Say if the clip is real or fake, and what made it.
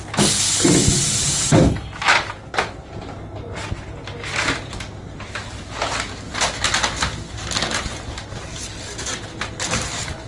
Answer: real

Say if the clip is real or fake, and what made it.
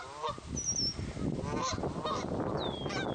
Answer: real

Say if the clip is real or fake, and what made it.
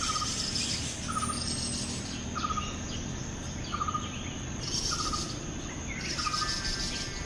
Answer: real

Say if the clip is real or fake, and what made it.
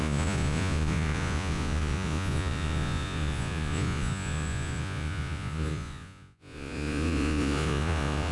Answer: fake, vocoder, Vocos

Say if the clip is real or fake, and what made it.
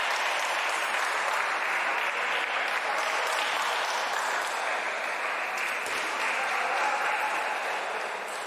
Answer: real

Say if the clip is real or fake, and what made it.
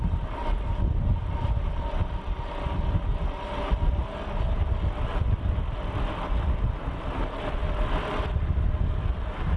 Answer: real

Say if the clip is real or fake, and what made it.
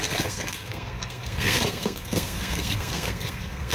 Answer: fake, codec, SNAC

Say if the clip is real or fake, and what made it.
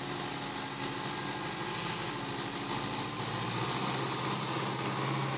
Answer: real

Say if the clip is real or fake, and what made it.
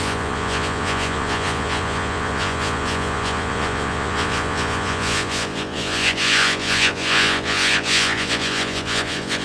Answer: fake, vocoder, Vocos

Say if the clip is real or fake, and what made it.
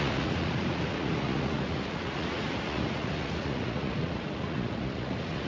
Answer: fake, vocoder, Vocos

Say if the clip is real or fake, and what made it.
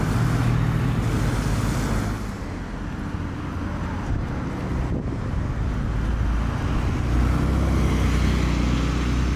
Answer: real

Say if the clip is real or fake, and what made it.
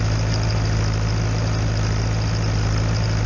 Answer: real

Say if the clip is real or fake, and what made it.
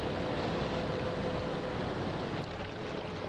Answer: real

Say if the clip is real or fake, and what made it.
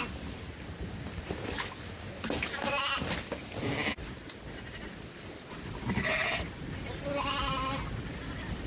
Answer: real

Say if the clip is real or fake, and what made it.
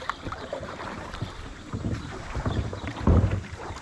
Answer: fake, vocoder, BigVGAN v2